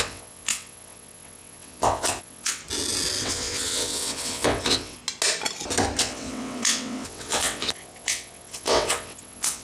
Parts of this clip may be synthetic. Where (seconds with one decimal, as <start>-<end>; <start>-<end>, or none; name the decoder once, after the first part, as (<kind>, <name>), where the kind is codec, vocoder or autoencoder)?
0.0-2.6 (vocoder, WaveNeXt); 3.2-5.0; 6.0-9.6